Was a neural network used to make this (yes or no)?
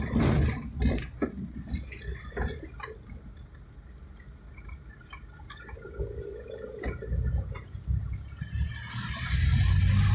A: no